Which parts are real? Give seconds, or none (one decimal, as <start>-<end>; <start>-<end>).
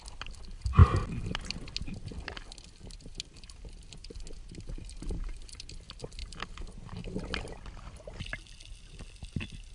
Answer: 0.0-9.7